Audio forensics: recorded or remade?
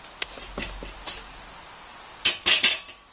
recorded